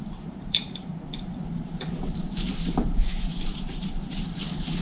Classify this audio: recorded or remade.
remade